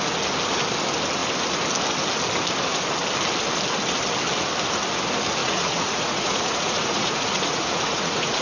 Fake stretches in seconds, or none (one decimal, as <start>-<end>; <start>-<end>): 5.4-8.4